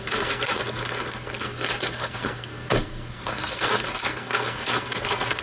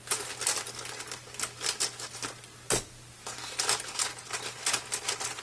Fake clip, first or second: first